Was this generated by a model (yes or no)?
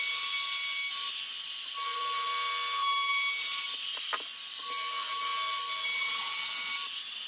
no